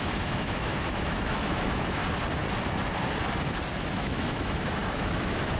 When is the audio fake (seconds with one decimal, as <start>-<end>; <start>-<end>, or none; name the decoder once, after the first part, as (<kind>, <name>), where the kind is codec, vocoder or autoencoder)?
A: 0.0-2.0 (autoencoder, DAC-VAE); 3.8-5.6